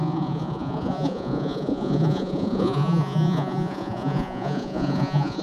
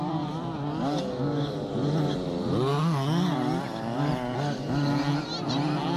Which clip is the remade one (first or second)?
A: first